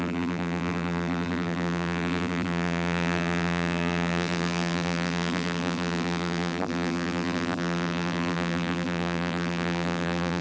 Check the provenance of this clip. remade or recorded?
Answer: remade